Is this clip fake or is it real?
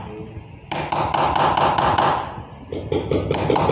real